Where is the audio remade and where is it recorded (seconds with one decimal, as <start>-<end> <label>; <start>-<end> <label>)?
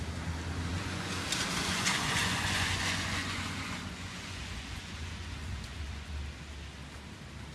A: 0.0-0.7 recorded; 0.7-1.2 remade; 1.2-1.6 recorded; 1.6-6.1 remade; 6.1-7.5 recorded